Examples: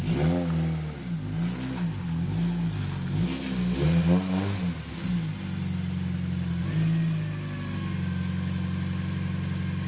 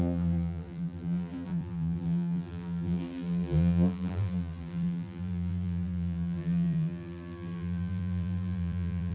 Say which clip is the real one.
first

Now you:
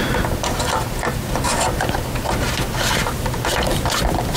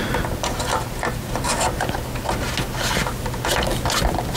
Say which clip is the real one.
second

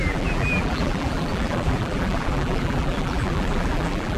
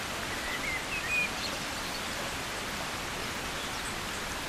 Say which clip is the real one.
second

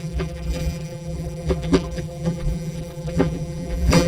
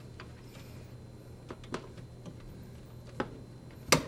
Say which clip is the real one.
second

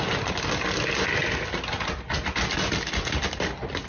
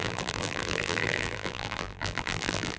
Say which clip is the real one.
first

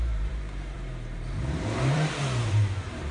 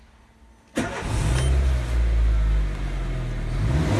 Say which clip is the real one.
second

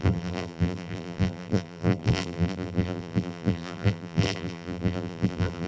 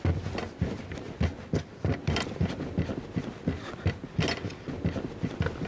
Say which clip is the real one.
second